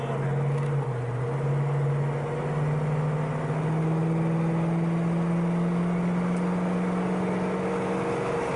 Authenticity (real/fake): real